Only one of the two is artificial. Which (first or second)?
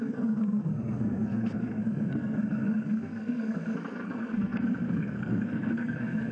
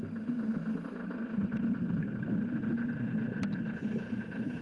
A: first